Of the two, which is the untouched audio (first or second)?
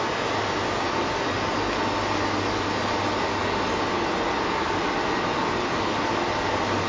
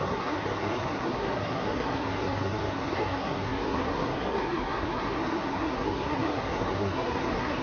first